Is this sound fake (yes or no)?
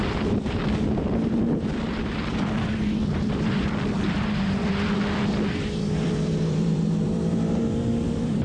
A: yes